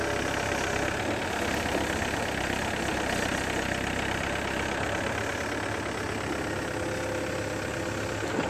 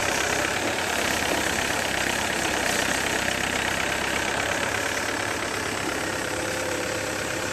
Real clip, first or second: first